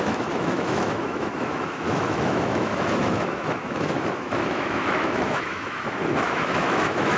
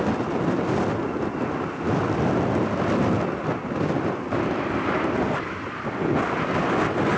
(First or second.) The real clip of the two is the second